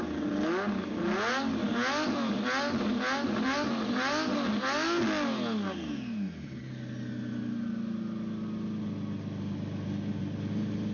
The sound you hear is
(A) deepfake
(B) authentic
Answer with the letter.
B